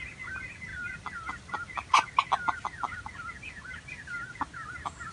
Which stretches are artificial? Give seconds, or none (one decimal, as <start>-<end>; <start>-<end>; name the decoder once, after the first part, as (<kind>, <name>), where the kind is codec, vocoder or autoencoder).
none